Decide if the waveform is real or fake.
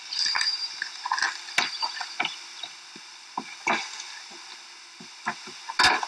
real